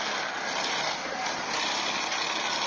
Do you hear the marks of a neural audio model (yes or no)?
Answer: no